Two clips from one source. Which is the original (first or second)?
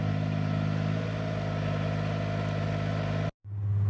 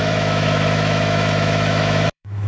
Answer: first